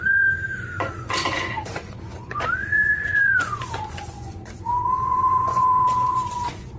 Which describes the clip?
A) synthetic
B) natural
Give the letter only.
A